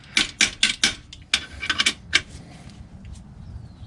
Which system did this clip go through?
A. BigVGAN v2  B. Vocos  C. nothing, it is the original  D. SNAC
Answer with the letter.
C